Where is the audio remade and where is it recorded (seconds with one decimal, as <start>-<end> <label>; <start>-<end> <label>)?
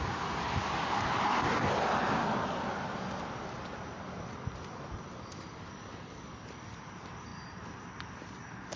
0.0-7.3 recorded; 7.3-8.4 remade; 8.4-8.8 recorded